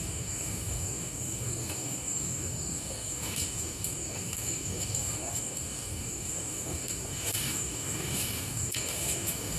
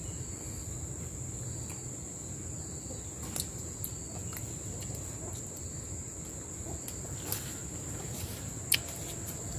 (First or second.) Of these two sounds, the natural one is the second